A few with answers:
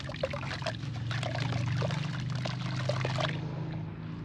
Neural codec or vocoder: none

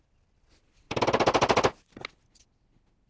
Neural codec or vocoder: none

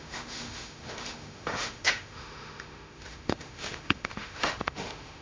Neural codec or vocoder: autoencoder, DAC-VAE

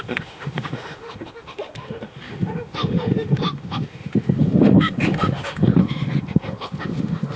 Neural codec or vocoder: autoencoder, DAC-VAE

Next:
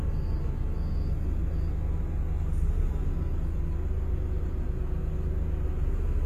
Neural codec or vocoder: none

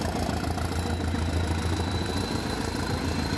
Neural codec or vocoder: none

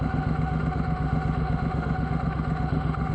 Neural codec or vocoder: autoencoder, DAC-VAE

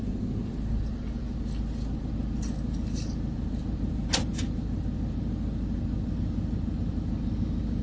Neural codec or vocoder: none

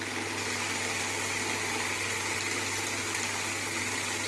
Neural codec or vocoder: none